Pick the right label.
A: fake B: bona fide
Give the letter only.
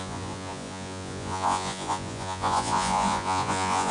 A